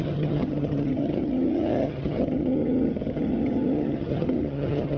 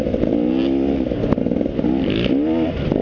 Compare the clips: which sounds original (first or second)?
second